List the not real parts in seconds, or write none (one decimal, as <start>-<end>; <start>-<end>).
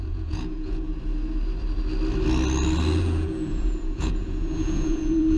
0.0-0.9; 3.0-5.4